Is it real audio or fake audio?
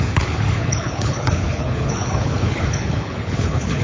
fake